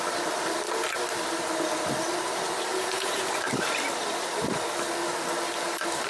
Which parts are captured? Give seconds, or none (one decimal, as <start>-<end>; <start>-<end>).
0.0-2.7; 3.3-6.1